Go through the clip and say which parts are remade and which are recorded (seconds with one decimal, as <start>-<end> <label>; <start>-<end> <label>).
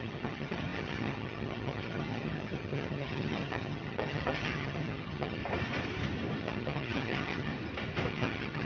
0.0-5.4 remade; 5.4-6.4 recorded; 6.4-7.5 remade; 7.5-8.1 recorded; 8.1-8.7 remade